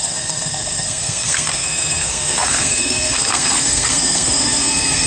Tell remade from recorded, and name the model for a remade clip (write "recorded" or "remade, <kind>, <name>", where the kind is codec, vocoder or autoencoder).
remade, codec, SNAC